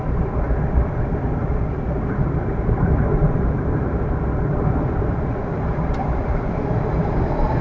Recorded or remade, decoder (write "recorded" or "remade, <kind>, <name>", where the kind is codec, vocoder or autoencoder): remade, vocoder, BigVGAN v2